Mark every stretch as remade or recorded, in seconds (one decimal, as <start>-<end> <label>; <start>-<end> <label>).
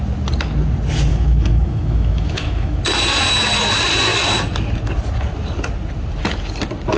0.0-1.1 recorded; 1.1-2.8 remade; 2.8-7.0 recorded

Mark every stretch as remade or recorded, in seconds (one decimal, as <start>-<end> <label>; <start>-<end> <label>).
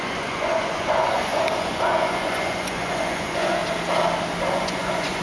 0.0-3.6 remade; 3.6-4.5 recorded; 4.5-5.2 remade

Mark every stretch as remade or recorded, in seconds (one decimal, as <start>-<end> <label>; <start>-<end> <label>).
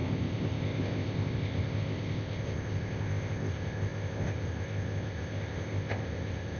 0.0-6.6 remade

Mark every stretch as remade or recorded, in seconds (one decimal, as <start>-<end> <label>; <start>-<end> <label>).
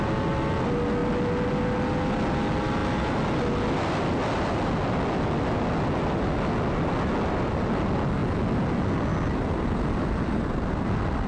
0.0-11.3 recorded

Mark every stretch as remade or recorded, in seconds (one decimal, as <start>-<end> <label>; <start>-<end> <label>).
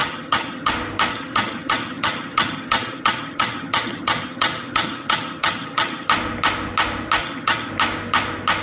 0.0-0.7 remade; 0.7-1.1 recorded; 1.1-6.1 remade; 6.1-7.2 recorded; 7.2-7.7 remade; 7.7-8.6 recorded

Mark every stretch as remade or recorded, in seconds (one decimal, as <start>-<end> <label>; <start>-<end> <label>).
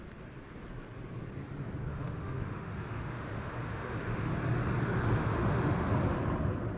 0.0-1.9 recorded; 1.9-4.3 remade; 4.3-5.2 recorded; 5.2-5.9 remade; 5.9-6.8 recorded